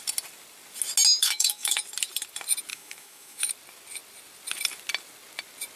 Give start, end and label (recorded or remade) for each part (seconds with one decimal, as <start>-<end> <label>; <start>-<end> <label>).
0.0-1.2 recorded; 1.2-1.8 remade; 1.8-2.7 recorded; 2.7-3.5 remade; 3.5-5.8 recorded